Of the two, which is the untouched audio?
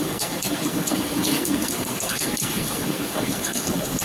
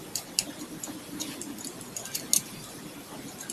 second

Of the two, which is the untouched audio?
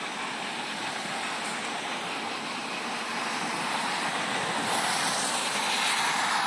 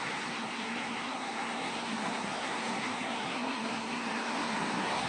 first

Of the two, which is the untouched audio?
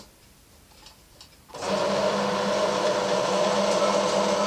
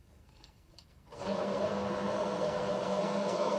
first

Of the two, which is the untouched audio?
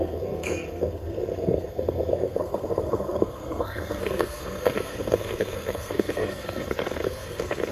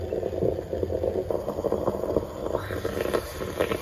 second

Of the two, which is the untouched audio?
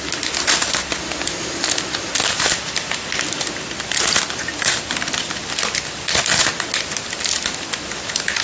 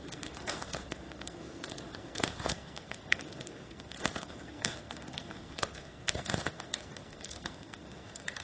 first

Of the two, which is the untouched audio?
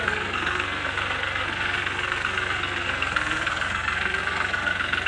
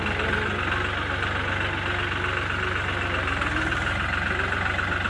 second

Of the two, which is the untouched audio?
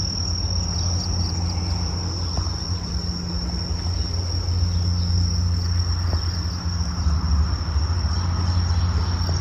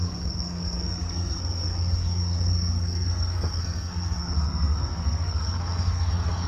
first